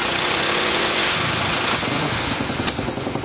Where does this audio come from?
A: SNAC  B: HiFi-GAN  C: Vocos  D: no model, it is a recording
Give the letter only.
C